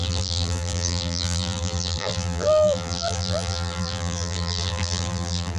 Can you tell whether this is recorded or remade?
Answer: remade